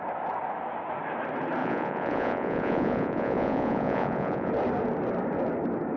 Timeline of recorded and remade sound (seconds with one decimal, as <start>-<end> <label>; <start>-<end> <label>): 0.0-1.6 recorded; 1.6-4.5 remade; 4.5-6.0 recorded